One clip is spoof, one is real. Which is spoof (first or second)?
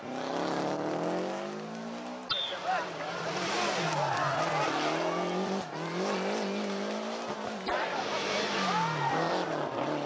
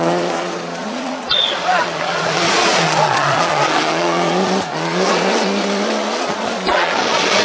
second